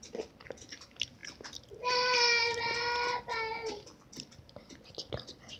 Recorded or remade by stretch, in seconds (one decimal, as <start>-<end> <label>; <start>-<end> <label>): 0.0-5.6 recorded